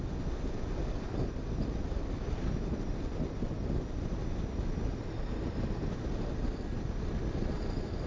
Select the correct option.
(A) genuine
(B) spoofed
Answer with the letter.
A